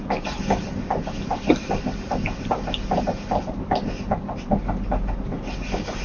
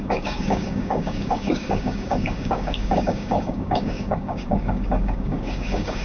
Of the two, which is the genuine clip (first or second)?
first